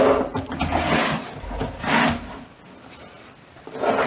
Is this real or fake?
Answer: fake